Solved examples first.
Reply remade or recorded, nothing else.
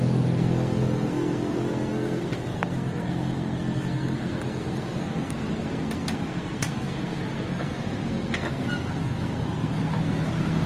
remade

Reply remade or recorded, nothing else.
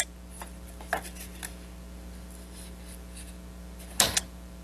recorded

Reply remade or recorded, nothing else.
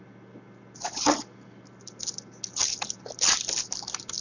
recorded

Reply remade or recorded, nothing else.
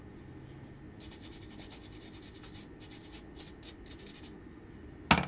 recorded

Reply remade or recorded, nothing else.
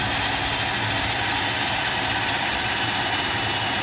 recorded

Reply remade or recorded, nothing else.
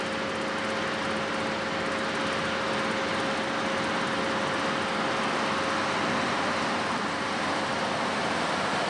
recorded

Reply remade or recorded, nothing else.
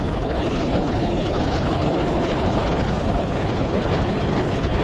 remade